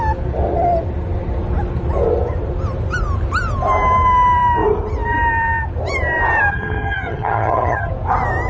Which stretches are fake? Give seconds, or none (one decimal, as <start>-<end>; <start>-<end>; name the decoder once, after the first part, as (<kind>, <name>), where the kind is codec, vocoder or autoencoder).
6.5-7.9 (vocoder, HiFi-GAN)